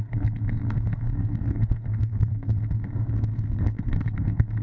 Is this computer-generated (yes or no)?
yes